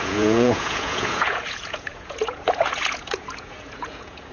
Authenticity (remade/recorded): remade